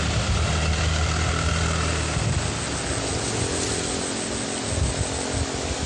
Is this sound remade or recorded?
recorded